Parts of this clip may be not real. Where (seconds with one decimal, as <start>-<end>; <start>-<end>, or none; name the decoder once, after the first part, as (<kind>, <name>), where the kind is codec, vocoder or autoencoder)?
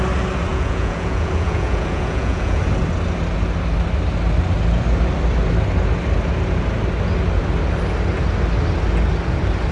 0.5-2.6 (vocoder, Vocos)